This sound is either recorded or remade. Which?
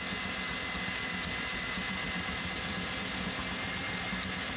recorded